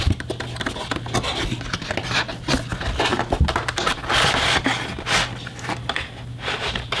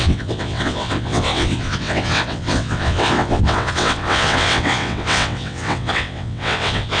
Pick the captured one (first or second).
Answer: first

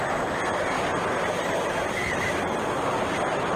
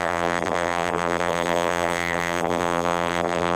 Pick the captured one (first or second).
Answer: first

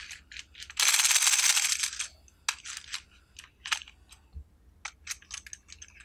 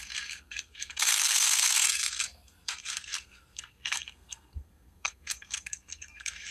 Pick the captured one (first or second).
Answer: first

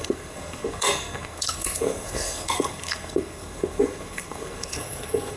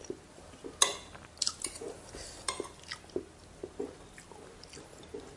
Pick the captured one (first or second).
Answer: second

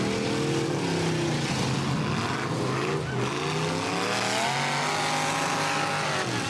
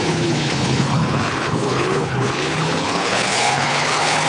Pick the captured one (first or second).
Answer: first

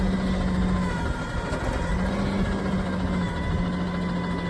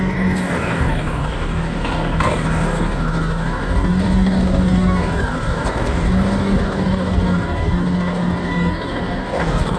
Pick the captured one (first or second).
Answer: first